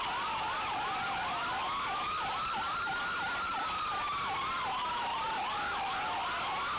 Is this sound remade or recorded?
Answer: recorded